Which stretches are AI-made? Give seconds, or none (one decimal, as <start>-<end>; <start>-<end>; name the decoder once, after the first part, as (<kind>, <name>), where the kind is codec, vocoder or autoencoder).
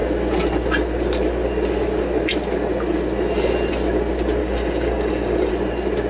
4.4-5.5 (codec, DAC)